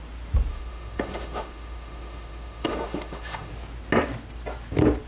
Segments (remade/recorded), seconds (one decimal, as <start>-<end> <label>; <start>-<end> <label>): 0.0-0.5 recorded; 0.5-3.5 remade; 3.5-5.1 recorded